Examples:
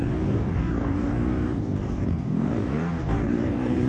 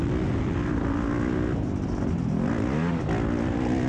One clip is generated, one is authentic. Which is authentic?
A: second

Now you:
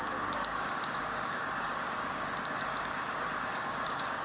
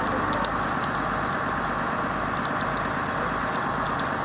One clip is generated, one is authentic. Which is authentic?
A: second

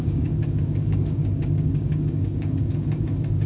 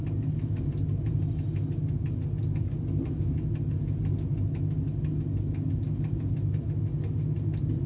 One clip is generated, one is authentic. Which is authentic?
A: second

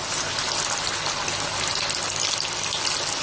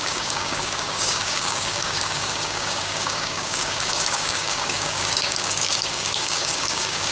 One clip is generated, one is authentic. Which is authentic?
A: first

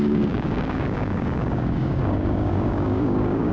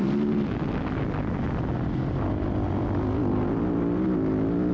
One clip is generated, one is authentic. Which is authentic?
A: second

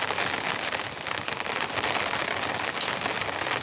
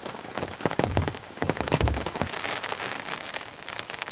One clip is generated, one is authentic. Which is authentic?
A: first